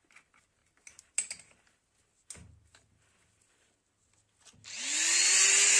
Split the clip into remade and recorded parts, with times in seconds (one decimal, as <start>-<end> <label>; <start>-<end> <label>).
0.0-5.8 recorded